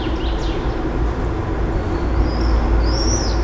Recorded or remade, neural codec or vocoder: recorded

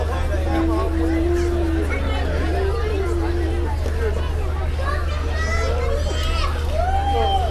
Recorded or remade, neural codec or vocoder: recorded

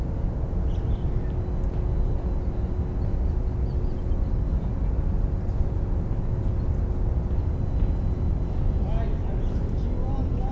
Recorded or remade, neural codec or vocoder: recorded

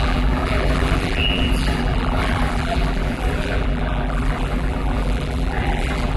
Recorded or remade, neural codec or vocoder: remade, vocoder, BigVGAN v2